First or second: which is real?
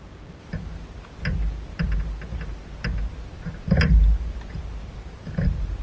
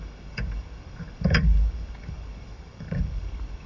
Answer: first